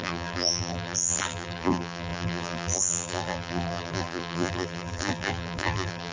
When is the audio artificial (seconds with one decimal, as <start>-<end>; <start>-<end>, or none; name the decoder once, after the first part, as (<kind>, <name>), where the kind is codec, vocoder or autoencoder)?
0.0-6.1 (vocoder, BigVGAN v2)